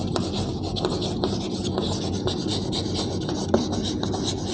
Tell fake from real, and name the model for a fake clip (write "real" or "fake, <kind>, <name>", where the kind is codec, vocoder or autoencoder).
real